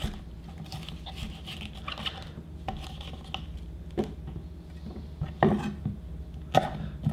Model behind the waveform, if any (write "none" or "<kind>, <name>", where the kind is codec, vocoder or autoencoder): none